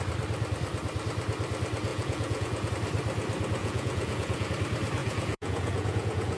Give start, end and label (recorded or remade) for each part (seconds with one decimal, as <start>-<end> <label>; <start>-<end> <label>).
0.0-1.9 recorded; 1.9-2.7 remade; 2.7-3.6 recorded; 3.6-4.5 remade; 4.5-5.0 recorded; 5.0-6.4 remade